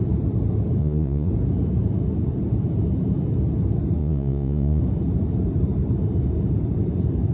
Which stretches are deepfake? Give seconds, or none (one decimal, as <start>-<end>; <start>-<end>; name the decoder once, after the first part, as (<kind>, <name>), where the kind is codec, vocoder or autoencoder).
0.8-1.3 (vocoder, Vocos); 4.0-4.8